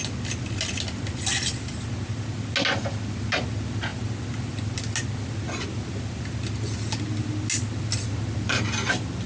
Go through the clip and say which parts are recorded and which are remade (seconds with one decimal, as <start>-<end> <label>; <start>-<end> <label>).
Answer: 0.0-9.3 recorded

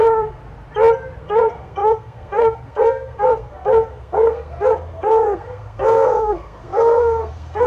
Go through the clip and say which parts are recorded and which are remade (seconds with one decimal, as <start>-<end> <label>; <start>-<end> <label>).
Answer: 0.0-0.4 remade; 0.4-1.2 recorded; 1.2-7.7 remade

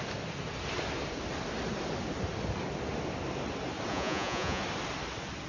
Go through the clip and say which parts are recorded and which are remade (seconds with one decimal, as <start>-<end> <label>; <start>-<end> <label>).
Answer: 0.0-3.9 recorded; 3.9-4.6 remade; 4.6-5.5 recorded